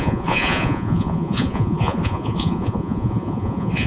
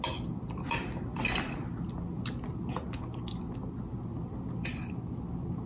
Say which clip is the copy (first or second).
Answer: first